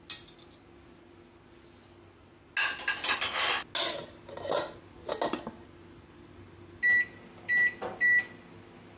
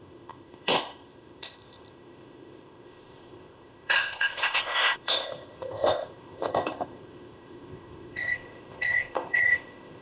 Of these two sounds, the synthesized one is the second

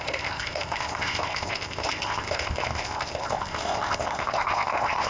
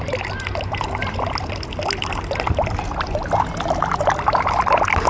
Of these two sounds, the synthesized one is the first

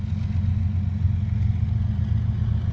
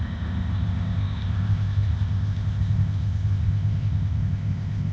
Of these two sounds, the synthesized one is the second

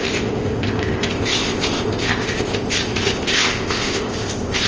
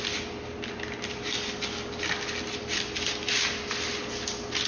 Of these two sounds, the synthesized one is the first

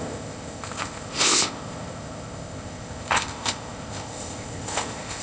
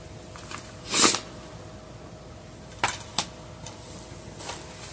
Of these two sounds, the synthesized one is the first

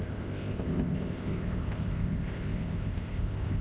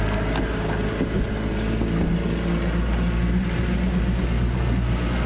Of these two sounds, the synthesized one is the first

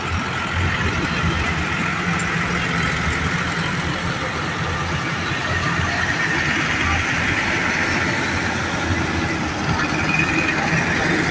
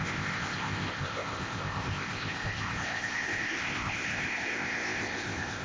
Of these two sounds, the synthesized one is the second